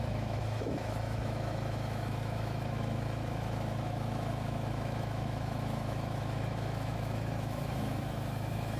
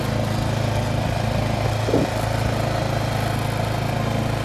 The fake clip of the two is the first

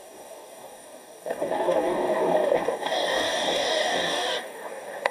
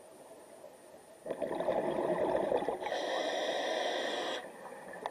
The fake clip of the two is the first